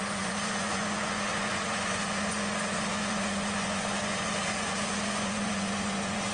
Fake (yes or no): yes